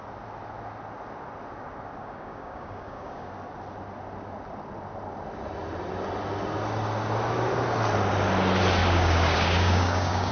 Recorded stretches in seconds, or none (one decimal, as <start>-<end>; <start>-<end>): 0.0-2.0; 3.3-8.8